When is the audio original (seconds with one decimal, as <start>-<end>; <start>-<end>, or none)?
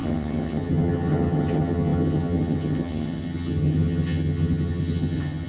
none